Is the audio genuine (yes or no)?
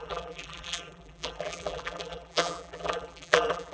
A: no